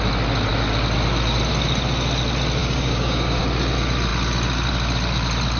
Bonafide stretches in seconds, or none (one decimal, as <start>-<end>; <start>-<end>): 0.0-2.6; 3.4-5.6